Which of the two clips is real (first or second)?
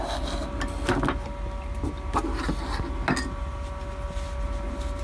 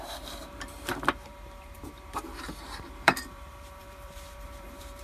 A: first